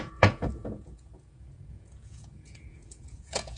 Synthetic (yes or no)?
yes